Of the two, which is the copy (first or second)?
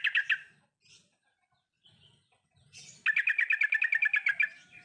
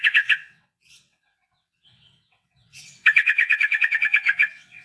second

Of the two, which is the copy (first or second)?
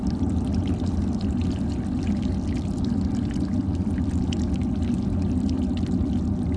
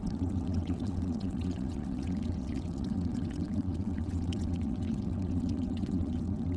second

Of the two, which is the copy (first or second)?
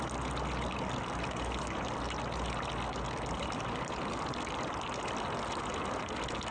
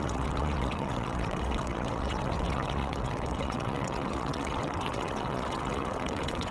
second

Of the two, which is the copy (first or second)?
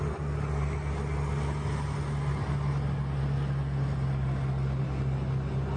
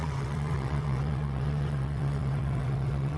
second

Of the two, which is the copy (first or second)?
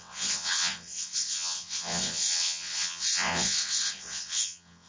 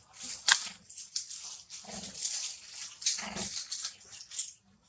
first